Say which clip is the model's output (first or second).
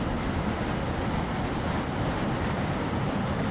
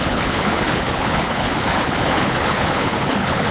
second